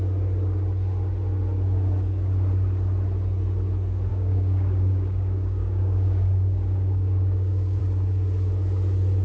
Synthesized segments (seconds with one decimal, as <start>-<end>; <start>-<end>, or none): 4.1-7.8

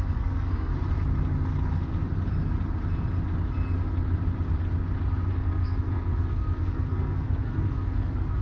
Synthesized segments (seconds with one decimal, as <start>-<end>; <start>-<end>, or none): 0.0-0.7; 5.3-8.4

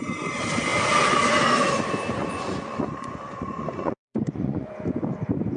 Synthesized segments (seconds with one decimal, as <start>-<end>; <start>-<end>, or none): 2.2-4.7

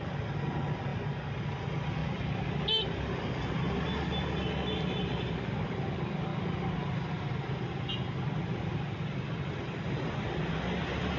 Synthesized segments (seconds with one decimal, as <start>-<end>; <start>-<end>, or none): none

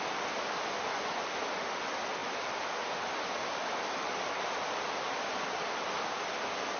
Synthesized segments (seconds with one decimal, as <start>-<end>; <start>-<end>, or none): 0.9-1.4

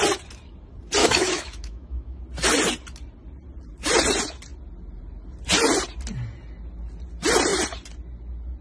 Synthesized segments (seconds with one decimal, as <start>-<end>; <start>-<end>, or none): 1.0-2.2